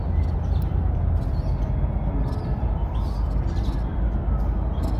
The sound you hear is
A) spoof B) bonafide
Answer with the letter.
B